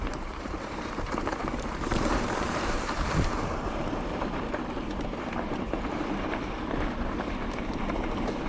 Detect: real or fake fake